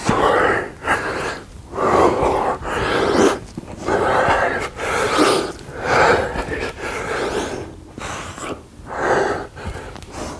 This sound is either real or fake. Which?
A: real